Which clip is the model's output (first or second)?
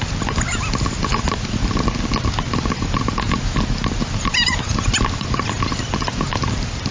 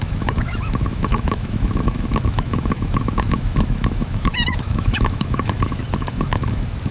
second